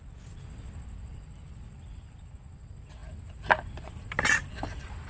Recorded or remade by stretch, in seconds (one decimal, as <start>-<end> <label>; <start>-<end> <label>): 0.0-3.0 recorded; 3.0-3.9 remade; 3.9-5.1 recorded

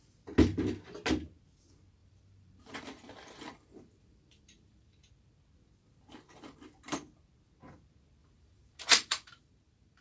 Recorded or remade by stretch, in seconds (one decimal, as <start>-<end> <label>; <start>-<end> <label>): 0.0-2.0 recorded; 2.0-5.1 remade; 5.1-8.2 recorded; 8.2-10.0 remade